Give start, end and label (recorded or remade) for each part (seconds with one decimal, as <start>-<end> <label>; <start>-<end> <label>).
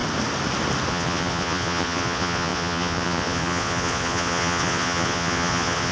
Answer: 0.0-0.9 recorded; 0.9-5.9 remade